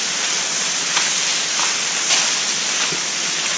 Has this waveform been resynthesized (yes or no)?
no